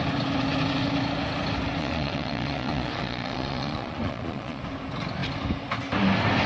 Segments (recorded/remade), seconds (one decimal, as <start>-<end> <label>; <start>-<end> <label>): 0.0-1.8 recorded; 1.8-4.6 remade; 4.6-6.5 recorded